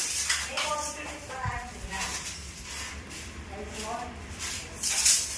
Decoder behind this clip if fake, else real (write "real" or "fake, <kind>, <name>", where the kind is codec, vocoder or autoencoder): fake, vocoder, BigVGAN v2